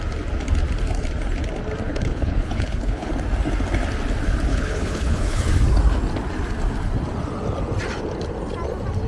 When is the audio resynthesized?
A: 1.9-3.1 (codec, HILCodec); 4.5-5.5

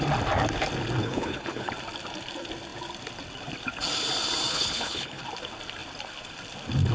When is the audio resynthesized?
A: 1.0-1.7 (codec, HILCodec); 4.5-5.2

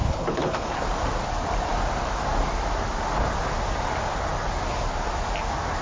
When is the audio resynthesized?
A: 0.0-0.8 (codec, HILCodec)

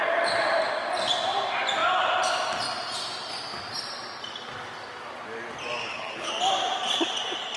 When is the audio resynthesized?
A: 5.8-6.3 (codec, HILCodec)

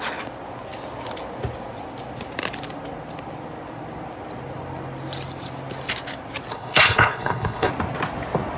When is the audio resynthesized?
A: 6.5-7.7 (codec, HILCodec)

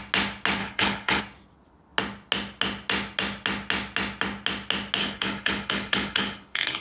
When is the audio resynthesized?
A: 0.6-1.2 (codec, HILCodec); 5.0-6.8